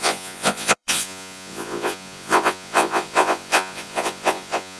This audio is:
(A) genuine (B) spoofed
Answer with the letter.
B